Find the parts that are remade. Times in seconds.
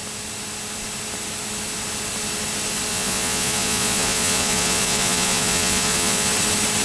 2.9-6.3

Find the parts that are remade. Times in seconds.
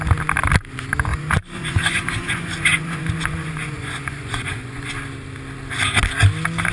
1.1-4.9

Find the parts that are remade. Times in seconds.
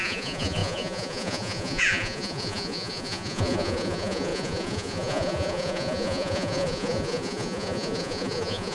0.0-8.7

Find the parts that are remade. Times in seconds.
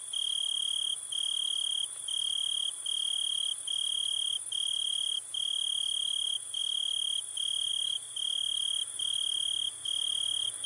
none